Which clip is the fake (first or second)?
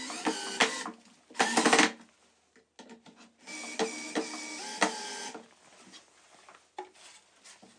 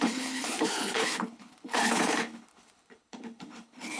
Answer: second